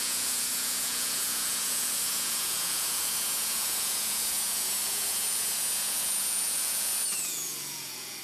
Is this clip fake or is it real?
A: fake